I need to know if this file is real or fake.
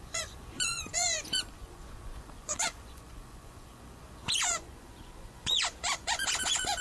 fake